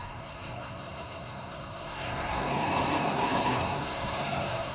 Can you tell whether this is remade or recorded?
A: remade